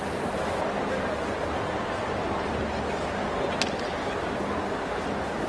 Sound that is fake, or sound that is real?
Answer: real